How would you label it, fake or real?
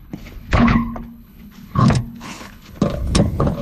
fake